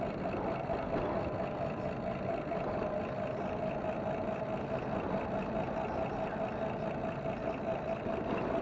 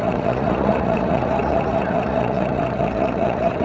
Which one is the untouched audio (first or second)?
first